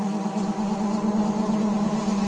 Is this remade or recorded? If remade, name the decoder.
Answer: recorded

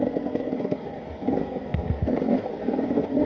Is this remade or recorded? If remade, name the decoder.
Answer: remade, codec, SNAC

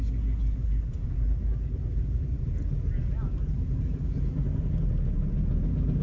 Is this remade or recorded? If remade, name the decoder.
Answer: recorded